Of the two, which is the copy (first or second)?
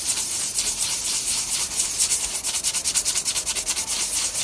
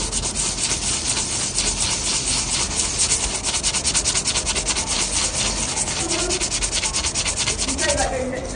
first